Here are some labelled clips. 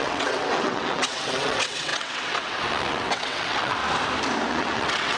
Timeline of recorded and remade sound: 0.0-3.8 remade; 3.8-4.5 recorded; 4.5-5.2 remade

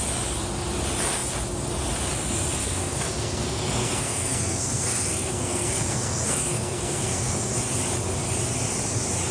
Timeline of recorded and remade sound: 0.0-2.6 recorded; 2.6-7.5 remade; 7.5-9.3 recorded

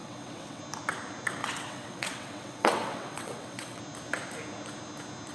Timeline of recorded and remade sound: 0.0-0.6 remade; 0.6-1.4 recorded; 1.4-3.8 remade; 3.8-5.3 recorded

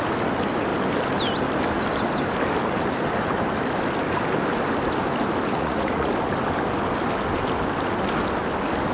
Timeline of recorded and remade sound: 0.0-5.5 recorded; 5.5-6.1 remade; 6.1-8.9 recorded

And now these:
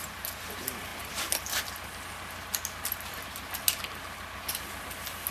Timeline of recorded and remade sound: 0.0-5.3 recorded